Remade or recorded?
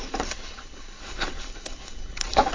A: remade